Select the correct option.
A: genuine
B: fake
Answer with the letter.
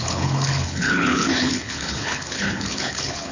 B